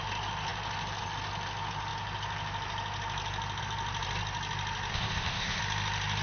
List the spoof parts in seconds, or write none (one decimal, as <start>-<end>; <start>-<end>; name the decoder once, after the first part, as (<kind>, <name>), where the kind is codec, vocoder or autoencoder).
4.9-5.6 (codec, ZipCodec)

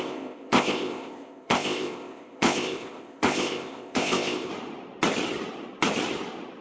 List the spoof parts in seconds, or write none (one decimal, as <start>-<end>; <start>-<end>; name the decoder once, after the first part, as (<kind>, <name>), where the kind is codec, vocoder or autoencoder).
0.0-4.5 (codec, ZipCodec)

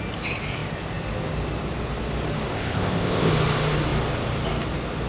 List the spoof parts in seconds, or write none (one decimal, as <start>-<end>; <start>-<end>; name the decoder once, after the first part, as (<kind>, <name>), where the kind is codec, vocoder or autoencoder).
2.5-3.3 (codec, ZipCodec)

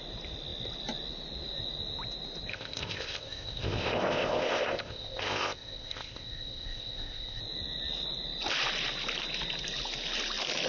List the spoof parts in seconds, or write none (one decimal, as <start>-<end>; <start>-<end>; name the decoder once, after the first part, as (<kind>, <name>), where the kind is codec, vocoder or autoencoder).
2.5-7.4 (codec, ZipCodec)

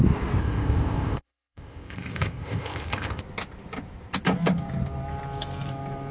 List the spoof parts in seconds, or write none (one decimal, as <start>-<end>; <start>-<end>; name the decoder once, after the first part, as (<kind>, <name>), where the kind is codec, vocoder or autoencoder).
0.4-3.2 (codec, ZipCodec)

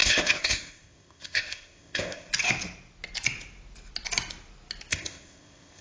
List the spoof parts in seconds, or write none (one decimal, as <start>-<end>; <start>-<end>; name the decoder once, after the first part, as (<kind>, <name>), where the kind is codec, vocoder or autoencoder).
0.0-2.3 (codec, ZipCodec); 4.9-5.8

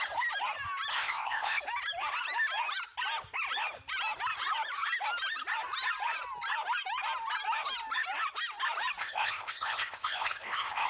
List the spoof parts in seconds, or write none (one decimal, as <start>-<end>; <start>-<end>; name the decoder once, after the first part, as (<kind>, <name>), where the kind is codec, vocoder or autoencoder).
0.9-1.6 (codec, ZipCodec); 9.0-10.9